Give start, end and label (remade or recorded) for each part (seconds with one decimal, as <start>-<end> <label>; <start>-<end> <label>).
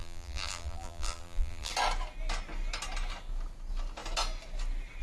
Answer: 0.0-1.7 remade; 1.7-5.0 recorded